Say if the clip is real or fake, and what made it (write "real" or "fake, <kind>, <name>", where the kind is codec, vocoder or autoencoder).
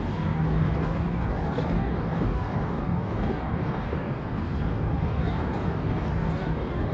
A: fake, codec, DAC